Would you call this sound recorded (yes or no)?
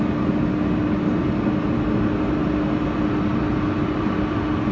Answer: yes